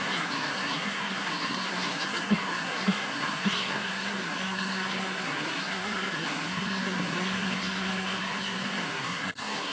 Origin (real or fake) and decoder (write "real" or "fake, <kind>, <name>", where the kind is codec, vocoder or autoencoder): fake, codec, SNAC